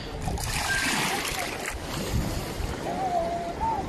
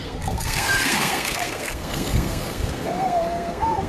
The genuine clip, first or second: first